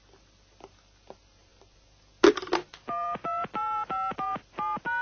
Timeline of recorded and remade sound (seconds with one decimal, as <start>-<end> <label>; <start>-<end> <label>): 0.0-5.0 recorded